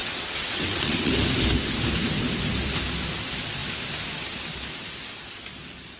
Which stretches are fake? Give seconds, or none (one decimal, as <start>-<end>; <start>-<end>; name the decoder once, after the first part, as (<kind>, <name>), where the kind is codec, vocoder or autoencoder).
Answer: 0.0-1.1 (vocoder, WaveNeXt)